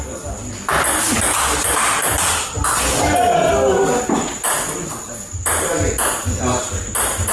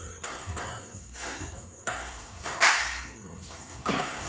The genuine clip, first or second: first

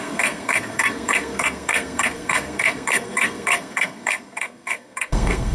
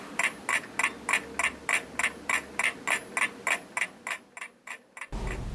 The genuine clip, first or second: second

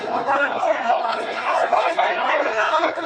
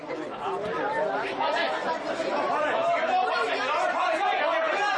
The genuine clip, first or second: second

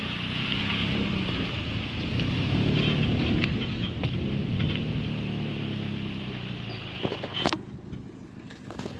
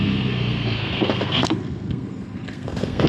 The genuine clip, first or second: first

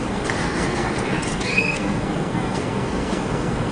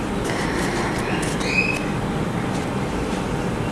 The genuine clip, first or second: second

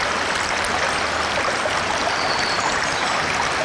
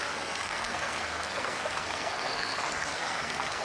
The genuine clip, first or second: first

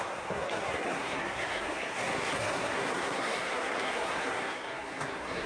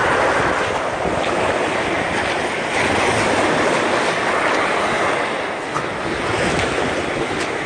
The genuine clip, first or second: second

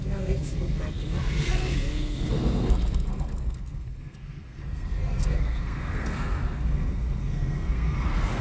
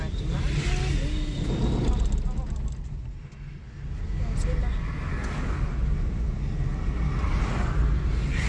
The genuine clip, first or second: second